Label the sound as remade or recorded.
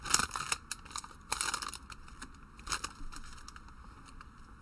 recorded